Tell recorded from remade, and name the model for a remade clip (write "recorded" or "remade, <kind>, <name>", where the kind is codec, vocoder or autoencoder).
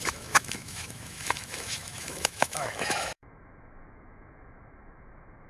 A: remade, autoencoder, DAC-VAE